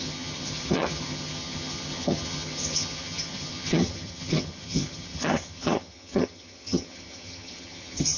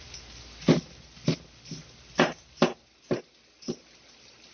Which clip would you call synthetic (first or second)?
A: first